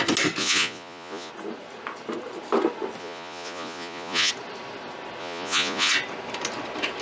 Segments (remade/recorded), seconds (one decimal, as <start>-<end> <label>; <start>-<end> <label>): 0.0-0.4 recorded; 0.4-1.3 remade; 1.3-3.0 recorded; 3.0-4.3 remade; 4.3-5.2 recorded; 5.2-5.9 remade; 5.9-7.0 recorded